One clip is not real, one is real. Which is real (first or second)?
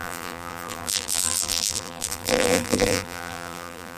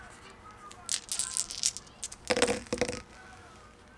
second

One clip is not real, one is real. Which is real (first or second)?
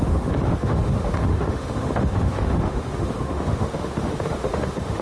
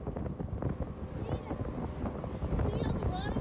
second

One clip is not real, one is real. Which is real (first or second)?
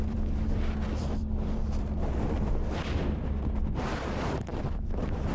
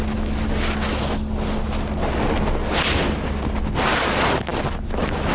second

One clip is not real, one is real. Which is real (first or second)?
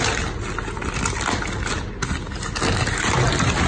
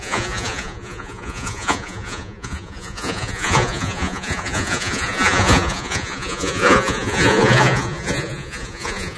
first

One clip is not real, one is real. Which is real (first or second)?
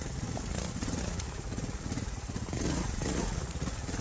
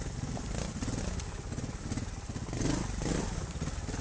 second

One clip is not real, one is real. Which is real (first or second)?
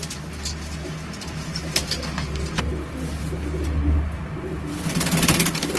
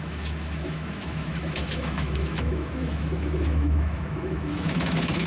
first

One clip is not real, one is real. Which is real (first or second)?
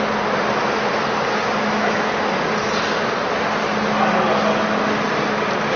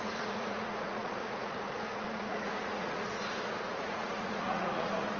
first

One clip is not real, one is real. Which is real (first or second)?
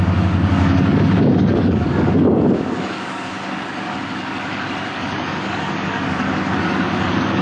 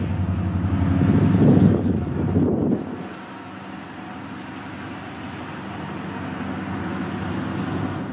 second